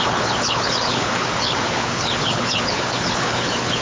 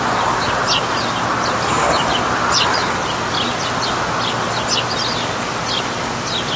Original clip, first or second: second